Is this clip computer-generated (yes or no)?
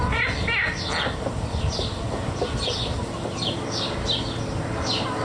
no